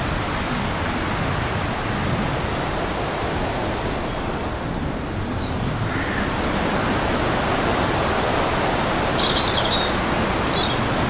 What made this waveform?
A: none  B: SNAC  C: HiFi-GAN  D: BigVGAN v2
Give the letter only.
A